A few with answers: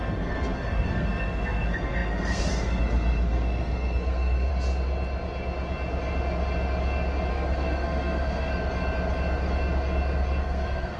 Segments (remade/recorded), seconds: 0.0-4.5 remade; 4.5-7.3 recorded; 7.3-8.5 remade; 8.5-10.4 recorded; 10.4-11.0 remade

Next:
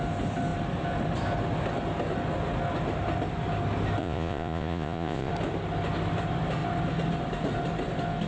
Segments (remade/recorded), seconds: 0.0-4.0 recorded; 4.0-5.3 remade; 5.3-8.3 recorded

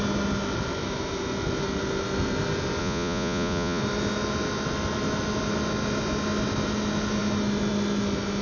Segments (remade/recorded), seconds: 0.0-2.8 recorded; 2.8-3.8 remade; 3.8-8.4 recorded

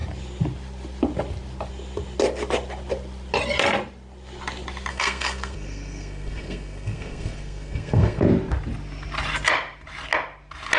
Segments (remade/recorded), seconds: 0.0-4.9 recorded; 4.9-8.2 remade; 8.2-10.8 recorded

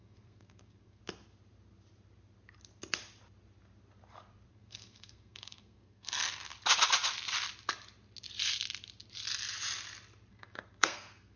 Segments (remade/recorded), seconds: 0.0-1.0 remade; 1.0-4.5 recorded; 4.5-6.5 remade; 6.5-10.3 recorded; 10.3-11.4 remade

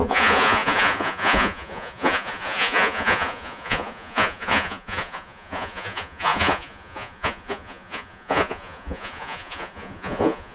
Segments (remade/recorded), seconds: 0.0-10.5 remade

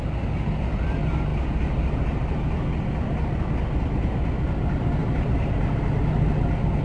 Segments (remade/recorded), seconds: 0.0-5.0 recorded; 5.0-6.0 remade; 6.0-6.8 recorded